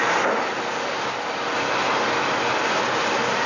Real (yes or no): yes